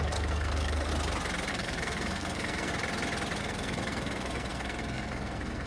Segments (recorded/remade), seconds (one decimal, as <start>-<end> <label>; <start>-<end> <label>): 0.0-0.9 remade; 0.9-1.5 recorded; 1.5-2.7 remade; 2.7-3.4 recorded; 3.4-5.7 remade